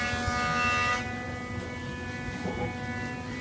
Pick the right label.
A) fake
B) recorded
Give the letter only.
B